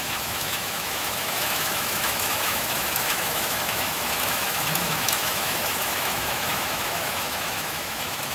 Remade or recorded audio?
remade